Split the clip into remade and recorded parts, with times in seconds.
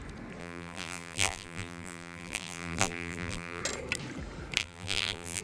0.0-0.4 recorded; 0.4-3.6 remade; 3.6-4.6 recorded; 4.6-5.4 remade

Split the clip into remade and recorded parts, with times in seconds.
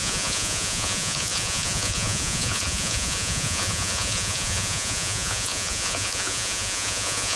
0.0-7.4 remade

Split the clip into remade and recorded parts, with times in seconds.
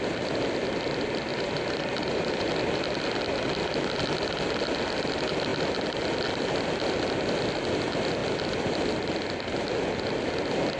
0.0-1.3 recorded; 1.3-2.5 remade; 2.5-10.8 recorded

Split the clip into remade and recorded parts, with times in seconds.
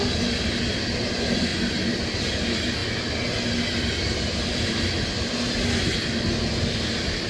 0.0-7.3 recorded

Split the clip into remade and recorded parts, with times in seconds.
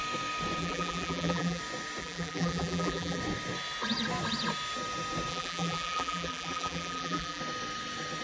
0.0-0.6 recorded; 0.6-1.6 remade; 1.6-2.0 recorded; 2.0-3.2 remade; 3.2-5.3 recorded; 5.3-7.4 remade; 7.4-8.2 recorded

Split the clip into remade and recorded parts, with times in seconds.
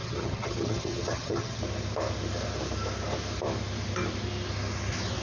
0.0-1.6 remade; 1.6-5.2 recorded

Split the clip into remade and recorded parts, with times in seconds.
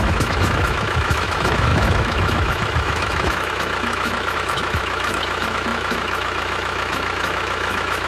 0.0-8.1 remade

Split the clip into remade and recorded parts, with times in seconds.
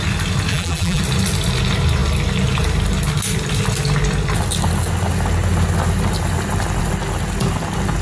0.0-0.5 recorded; 0.5-1.0 remade; 1.0-8.0 recorded